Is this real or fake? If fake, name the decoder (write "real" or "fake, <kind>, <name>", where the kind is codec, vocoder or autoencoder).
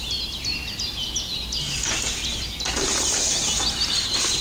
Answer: real